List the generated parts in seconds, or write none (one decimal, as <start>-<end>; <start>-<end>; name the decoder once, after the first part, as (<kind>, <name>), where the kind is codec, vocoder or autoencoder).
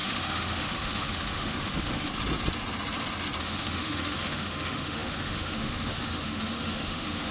0.0-2.1 (autoencoder, DAC-VAE); 3.4-7.3